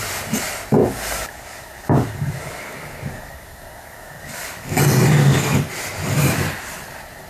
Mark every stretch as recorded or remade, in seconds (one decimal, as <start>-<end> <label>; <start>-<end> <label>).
0.0-0.8 recorded; 0.8-4.8 remade; 4.8-5.2 recorded; 5.2-5.7 remade; 5.7-7.3 recorded